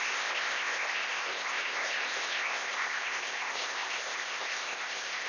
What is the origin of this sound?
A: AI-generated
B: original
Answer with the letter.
A